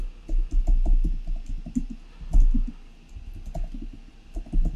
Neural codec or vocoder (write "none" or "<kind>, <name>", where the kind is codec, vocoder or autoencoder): none